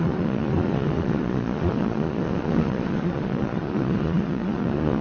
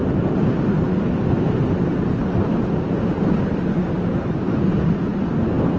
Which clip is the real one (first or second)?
second